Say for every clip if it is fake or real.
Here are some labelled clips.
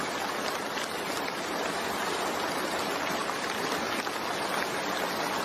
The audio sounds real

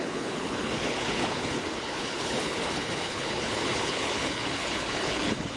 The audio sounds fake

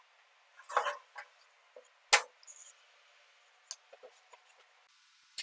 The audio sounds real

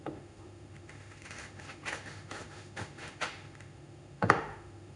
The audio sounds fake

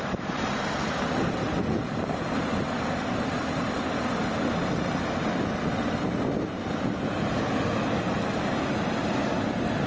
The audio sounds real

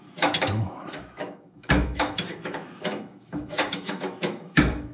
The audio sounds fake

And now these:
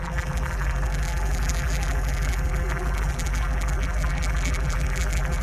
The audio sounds fake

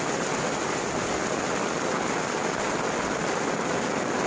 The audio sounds real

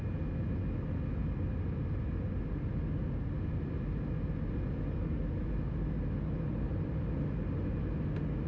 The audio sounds real